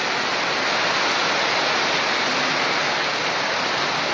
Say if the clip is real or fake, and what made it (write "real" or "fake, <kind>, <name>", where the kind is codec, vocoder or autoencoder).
real